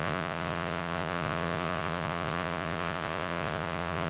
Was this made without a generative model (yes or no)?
no